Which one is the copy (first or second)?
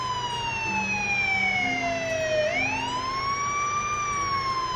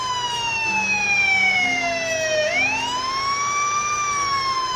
second